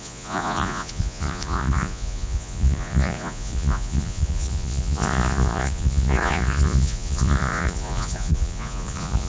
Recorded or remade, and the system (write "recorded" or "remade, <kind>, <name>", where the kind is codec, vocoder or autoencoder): remade, vocoder, Vocos